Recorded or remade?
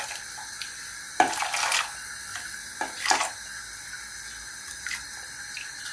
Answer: recorded